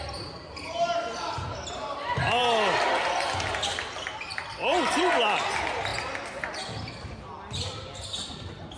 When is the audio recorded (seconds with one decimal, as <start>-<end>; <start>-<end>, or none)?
0.0-8.8